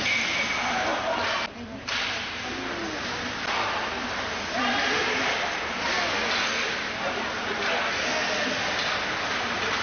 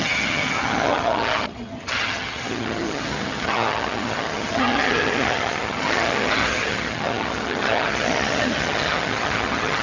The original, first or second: first